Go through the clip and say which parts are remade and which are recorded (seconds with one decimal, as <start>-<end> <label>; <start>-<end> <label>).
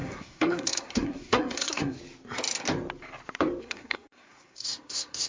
0.0-2.0 remade; 2.0-3.6 recorded; 3.6-5.3 remade